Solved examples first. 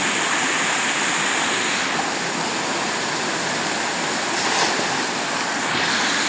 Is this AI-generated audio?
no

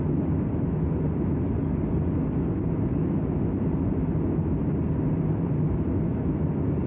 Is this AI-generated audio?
no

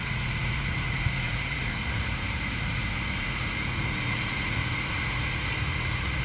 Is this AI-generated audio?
yes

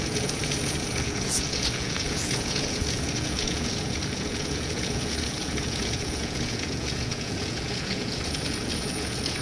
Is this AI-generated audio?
yes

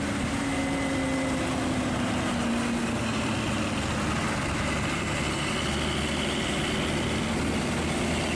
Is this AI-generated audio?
no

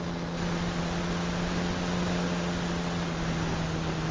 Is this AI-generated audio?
no